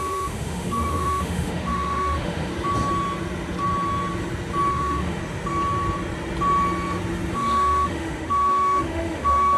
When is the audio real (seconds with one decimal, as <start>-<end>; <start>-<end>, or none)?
2.5-4.7; 5.2-7.3